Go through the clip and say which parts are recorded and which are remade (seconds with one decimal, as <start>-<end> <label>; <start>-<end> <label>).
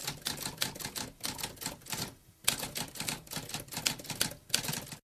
0.0-5.1 recorded